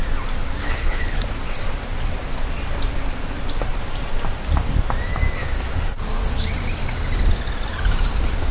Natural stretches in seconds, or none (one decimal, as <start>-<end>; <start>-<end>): 0.0-0.6; 1.2-8.5